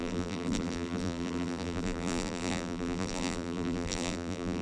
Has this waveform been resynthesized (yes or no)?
yes